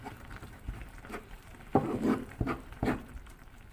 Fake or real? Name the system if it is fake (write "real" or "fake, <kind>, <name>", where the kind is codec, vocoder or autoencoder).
fake, vocoder, BigVGAN v2